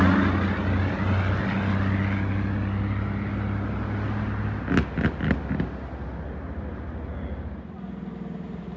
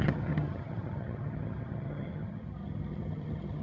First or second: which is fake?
second